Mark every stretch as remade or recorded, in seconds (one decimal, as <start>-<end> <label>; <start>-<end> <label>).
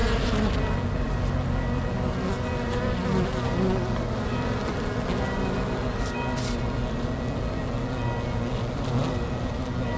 0.0-10.0 recorded